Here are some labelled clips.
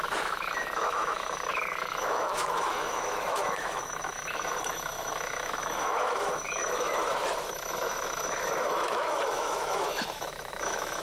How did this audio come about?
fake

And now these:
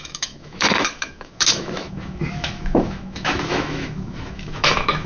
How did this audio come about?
fake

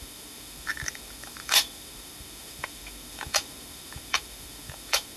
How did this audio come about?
fake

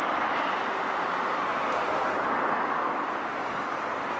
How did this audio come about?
real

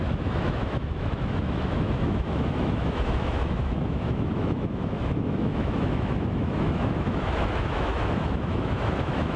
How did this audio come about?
fake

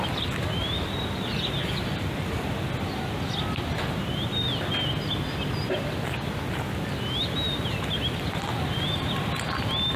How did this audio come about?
real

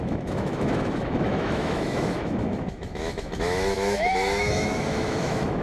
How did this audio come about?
fake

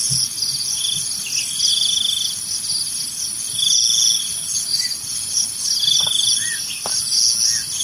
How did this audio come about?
real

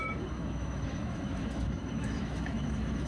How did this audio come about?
fake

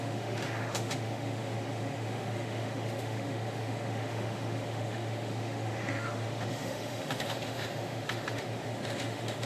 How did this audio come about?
fake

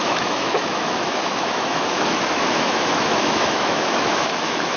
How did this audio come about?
fake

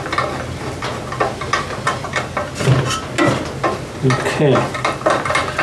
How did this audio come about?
real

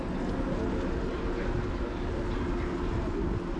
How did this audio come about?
real